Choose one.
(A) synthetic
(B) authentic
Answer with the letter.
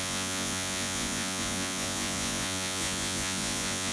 A